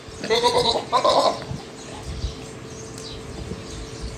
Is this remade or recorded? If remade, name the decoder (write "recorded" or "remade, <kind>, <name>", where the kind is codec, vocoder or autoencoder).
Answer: recorded